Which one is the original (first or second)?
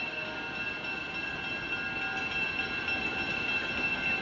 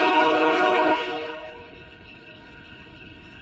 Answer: first